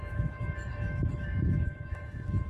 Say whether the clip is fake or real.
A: fake